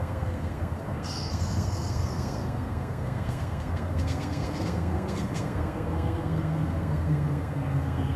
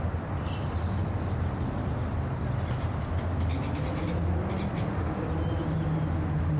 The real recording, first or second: second